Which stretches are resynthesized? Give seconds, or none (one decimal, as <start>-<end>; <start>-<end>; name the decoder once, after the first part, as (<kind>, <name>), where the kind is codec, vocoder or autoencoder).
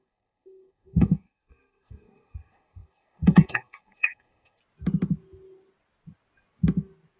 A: 0.0-4.6 (codec, SNAC)